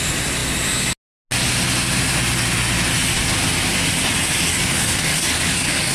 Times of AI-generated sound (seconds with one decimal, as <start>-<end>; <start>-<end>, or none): 4.5-5.9